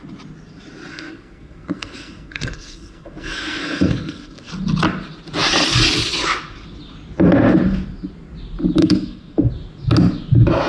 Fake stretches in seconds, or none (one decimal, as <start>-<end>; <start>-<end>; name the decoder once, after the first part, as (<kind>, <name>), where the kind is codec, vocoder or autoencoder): 0.9-4.5 (codec, SNAC); 8.8-9.5